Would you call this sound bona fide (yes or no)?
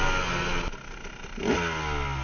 yes